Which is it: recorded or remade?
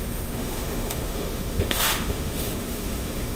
remade